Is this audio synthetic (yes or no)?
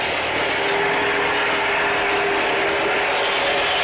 no